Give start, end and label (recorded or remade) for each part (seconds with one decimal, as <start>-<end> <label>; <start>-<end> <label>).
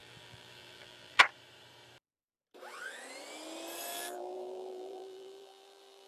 0.0-1.2 remade; 1.2-3.9 recorded; 3.9-6.1 remade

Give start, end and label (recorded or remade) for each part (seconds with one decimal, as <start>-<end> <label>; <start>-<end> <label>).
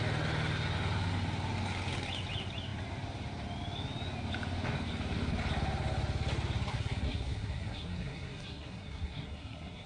0.0-6.7 recorded; 6.7-9.9 remade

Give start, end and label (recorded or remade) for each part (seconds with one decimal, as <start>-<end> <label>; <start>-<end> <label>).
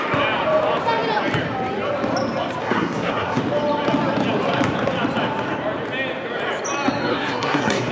0.0-2.6 recorded; 2.6-3.4 remade; 3.4-7.1 recorded; 7.1-7.9 remade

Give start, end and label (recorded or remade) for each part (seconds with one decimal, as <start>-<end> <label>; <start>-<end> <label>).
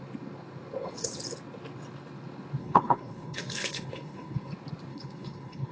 0.0-2.6 recorded; 2.6-4.5 remade; 4.5-4.9 recorded; 4.9-5.7 remade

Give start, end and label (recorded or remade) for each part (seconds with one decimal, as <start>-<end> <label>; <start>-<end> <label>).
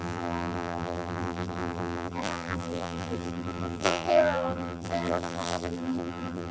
0.0-6.5 remade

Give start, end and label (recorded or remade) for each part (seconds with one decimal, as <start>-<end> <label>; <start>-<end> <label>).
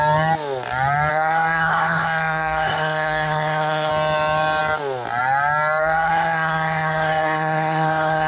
0.0-1.1 recorded; 1.1-3.9 remade; 3.9-5.8 recorded; 5.8-8.3 remade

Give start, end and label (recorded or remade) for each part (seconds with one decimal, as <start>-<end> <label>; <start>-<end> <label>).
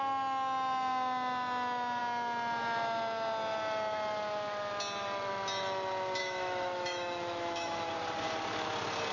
0.0-6.2 recorded; 6.2-7.9 remade; 7.9-9.1 recorded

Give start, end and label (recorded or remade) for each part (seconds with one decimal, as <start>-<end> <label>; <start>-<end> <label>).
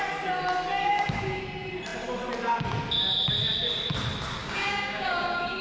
0.0-0.8 recorded; 0.8-1.4 remade; 1.4-4.4 recorded; 4.4-5.6 remade